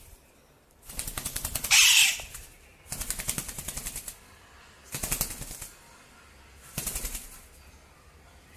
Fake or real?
real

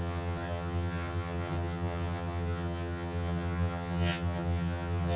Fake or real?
fake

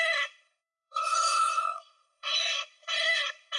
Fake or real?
fake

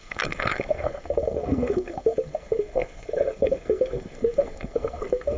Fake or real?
fake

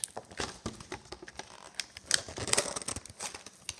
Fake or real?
real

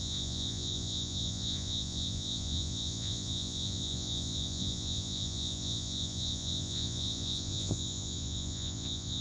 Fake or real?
fake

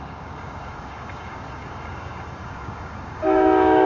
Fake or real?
fake